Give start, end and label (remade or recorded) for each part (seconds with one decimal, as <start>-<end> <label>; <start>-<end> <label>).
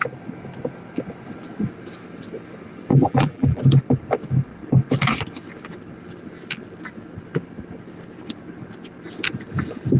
0.0-2.9 recorded; 2.9-3.6 remade; 3.6-10.0 recorded